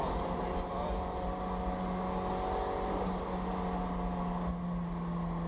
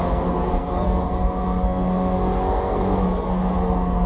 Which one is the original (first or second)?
first